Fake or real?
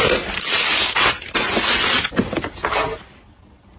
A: real